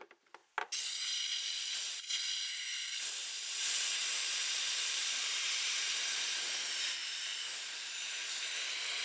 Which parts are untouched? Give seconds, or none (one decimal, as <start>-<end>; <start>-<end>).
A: 0.0-3.2; 5.9-7.0; 8.2-9.0